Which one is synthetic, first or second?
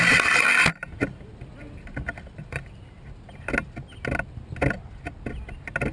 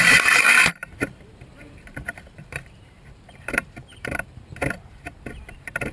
second